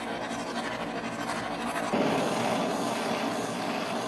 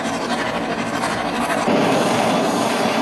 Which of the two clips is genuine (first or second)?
first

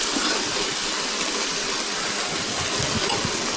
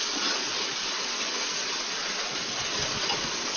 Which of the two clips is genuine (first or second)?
first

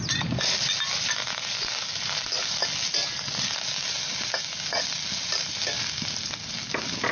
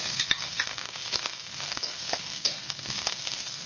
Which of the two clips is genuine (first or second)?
first